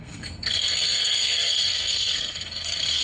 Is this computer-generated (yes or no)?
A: yes